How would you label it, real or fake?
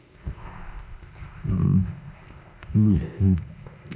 fake